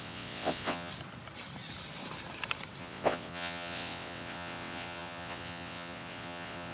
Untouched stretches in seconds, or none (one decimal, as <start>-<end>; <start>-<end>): 0.9-2.8